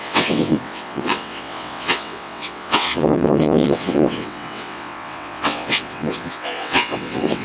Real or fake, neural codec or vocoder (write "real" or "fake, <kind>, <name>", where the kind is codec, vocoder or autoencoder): fake, vocoder, WaveNeXt